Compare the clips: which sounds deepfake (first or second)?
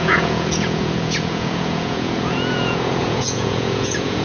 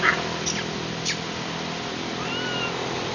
first